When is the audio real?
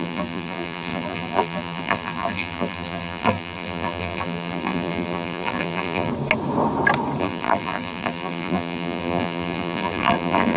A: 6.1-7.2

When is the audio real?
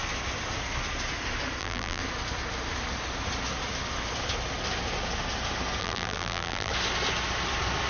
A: 0.0-1.6; 2.0-5.8; 6.7-7.9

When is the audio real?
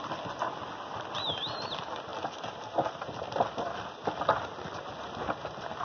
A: 0.0-5.8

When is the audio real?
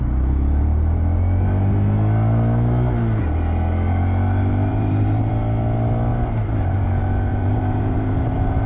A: 0.0-4.7; 5.3-6.1; 6.8-7.3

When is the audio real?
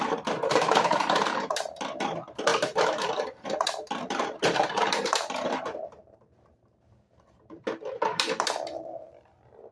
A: none